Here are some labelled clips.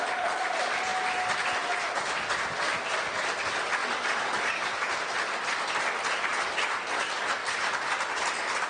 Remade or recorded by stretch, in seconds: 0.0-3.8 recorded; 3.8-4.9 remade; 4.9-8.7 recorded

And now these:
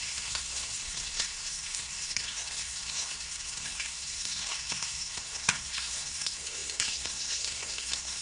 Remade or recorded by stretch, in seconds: 0.0-8.2 remade

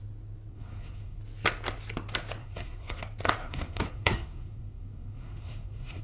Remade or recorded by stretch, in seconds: 0.0-0.5 recorded; 0.5-1.2 remade; 1.2-2.4 recorded; 2.4-3.0 remade; 3.0-3.4 recorded; 3.4-6.0 remade

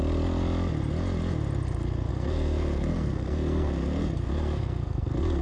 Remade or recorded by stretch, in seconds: 0.0-2.1 recorded; 2.1-5.4 remade

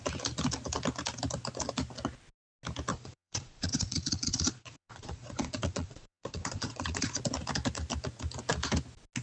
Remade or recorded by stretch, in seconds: 0.0-2.9 recorded; 2.9-7.2 remade; 7.2-9.2 recorded